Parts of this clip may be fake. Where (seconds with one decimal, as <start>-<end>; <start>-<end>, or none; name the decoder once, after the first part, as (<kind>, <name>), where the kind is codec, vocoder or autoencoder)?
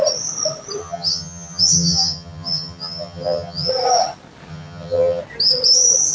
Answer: 0.8-3.7 (vocoder, HiFi-GAN); 4.5-5.2